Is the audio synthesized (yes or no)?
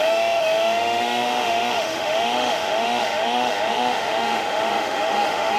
yes